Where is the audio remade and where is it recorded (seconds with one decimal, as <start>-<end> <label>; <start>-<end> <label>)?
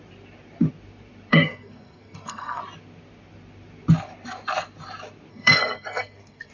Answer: 0.0-1.3 recorded; 1.3-2.6 remade; 2.6-5.3 recorded; 5.3-6.5 remade